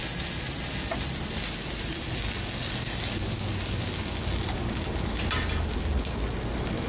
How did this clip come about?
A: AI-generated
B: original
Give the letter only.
B